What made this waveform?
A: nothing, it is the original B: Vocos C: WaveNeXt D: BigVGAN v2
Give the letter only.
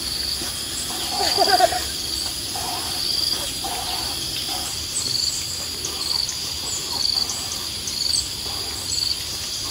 A